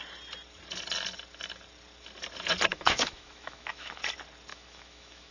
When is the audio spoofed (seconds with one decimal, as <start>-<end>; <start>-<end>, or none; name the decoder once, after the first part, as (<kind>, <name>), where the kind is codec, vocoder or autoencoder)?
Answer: 2.7-4.0 (autoencoder, DAC-VAE); 4.5-5.3